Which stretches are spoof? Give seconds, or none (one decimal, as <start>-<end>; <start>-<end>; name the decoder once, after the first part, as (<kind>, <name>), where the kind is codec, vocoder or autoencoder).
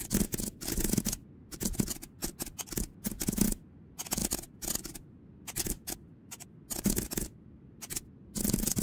none